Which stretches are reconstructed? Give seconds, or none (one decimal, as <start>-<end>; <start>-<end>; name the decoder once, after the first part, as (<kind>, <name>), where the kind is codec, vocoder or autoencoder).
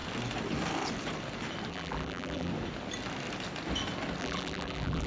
1.7-2.5 (vocoder, BigVGAN v2); 4.2-5.1